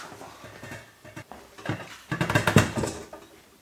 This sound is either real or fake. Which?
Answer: real